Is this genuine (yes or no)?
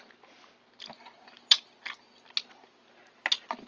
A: yes